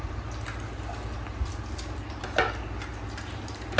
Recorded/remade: recorded